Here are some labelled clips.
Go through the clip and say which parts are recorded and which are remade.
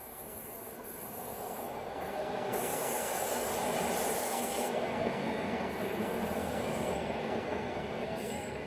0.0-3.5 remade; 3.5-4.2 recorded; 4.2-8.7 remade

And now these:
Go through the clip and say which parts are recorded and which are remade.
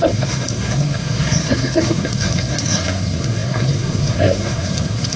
0.0-5.2 remade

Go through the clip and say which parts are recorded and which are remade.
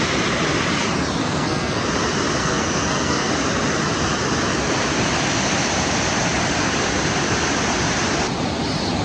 0.0-1.2 recorded; 1.2-1.8 remade; 1.8-2.4 recorded; 2.4-3.3 remade; 3.3-9.0 recorded